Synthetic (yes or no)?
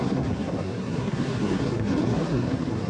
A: yes